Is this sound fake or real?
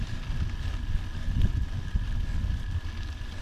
real